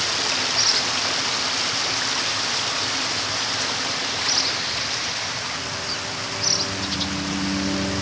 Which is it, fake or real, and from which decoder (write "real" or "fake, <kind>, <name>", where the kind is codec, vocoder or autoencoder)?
real